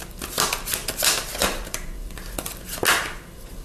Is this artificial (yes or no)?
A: no